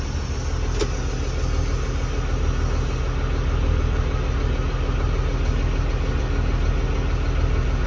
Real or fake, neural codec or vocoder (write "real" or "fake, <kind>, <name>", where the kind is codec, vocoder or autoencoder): real